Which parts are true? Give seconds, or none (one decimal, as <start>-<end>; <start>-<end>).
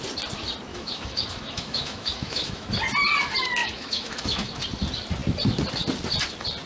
0.0-0.7; 2.7-3.6; 4.6-6.7